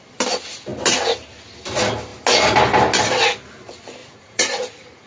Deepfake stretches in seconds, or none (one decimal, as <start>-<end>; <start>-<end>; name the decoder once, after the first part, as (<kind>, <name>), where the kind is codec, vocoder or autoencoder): 4.0-5.1 (vocoder, Vocos)